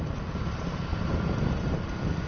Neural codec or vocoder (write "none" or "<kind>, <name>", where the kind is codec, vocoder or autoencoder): none